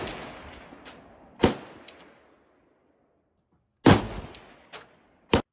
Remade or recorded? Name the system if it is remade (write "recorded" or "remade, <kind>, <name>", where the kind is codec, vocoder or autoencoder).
recorded